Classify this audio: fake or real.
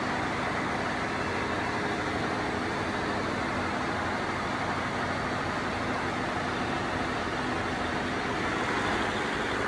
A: real